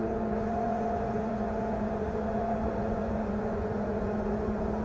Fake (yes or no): yes